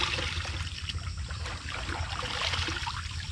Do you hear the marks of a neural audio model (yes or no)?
no